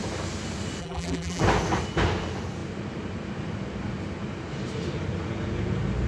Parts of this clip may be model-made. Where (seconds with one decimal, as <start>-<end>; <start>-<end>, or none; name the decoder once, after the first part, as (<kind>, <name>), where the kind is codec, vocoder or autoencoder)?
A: 0.8-1.4 (vocoder, BigVGAN v2)